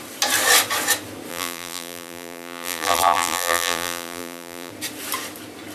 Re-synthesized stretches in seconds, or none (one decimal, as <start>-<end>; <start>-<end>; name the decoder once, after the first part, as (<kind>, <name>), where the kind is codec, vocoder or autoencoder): 1.3-4.7 (vocoder, BigVGAN v2)